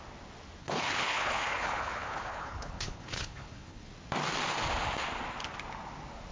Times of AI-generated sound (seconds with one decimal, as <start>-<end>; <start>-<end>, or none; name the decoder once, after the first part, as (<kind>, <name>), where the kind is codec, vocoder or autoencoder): 0.6-3.9 (codec, HILCodec)